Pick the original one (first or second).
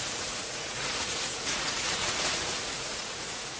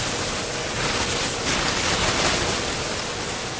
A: second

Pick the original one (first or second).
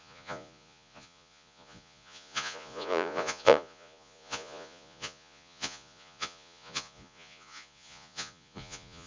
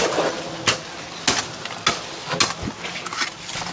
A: second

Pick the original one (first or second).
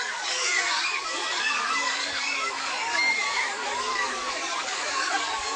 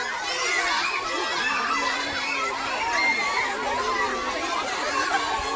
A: second